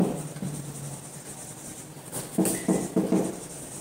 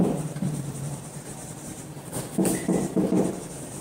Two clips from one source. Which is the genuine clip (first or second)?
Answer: first